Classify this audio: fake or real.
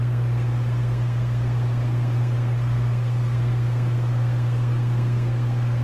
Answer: fake